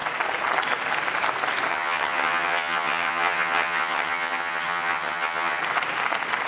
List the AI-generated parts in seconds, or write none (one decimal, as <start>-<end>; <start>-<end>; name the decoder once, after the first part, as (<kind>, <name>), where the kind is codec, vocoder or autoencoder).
1.7-5.6 (vocoder, HiFi-GAN)